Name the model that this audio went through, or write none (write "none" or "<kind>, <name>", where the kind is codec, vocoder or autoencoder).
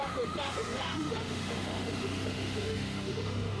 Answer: autoencoder, DAC-VAE